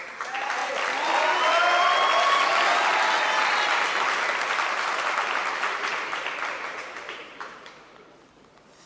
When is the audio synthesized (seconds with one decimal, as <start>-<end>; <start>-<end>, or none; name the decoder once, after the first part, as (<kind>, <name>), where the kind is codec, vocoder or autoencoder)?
0.0-0.6 (vocoder, BigVGAN v2); 5.7-6.2; 6.7-8.9